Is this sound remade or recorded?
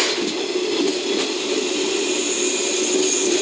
recorded